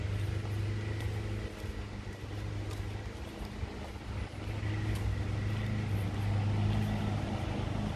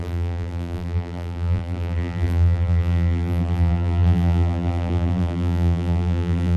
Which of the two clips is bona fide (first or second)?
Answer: first